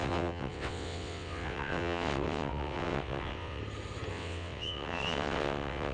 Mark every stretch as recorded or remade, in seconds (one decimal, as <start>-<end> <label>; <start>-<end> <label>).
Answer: 0.0-3.6 remade; 3.6-4.1 recorded; 4.1-5.9 remade